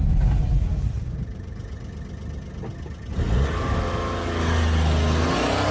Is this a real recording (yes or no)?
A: yes